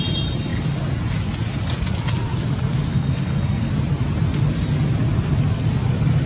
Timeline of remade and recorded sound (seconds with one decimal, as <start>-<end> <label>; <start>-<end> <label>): 0.0-2.9 recorded; 2.9-3.7 remade; 3.7-6.3 recorded